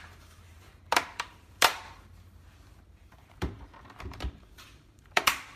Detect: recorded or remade remade